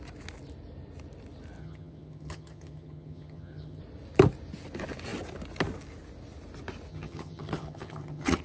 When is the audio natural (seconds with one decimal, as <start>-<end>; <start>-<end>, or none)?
0.0-1.6; 3.8-6.9